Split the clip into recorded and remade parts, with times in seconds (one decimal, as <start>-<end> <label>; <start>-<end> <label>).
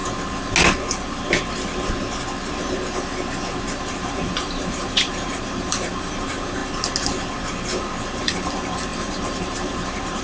0.0-3.9 recorded; 3.9-6.6 remade; 6.6-8.2 recorded; 8.2-10.2 remade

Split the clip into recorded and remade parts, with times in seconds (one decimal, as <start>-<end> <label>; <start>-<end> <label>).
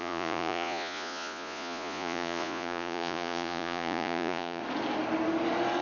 0.0-4.6 remade; 4.6-5.8 recorded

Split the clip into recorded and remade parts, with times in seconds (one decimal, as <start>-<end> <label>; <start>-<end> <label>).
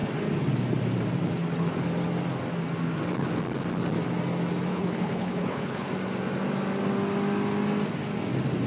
0.0-4.7 recorded; 4.7-5.9 remade; 5.9-8.7 recorded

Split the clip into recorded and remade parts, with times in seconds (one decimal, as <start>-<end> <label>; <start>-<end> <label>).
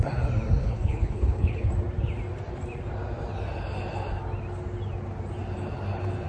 0.0-0.6 recorded; 0.6-1.7 remade; 1.7-6.3 recorded